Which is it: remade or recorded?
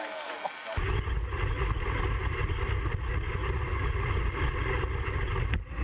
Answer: recorded